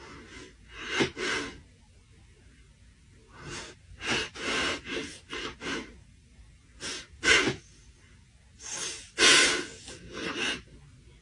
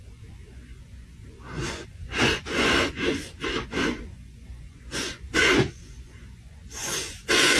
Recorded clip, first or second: first